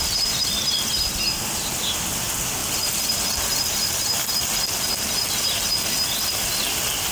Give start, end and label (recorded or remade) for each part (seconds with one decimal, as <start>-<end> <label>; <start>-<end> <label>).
0.0-7.1 recorded